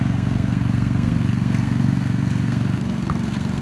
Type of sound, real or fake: fake